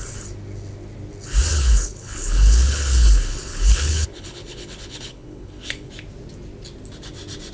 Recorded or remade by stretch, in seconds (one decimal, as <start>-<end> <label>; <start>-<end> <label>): 0.0-1.5 recorded; 1.5-5.9 remade; 5.9-7.5 recorded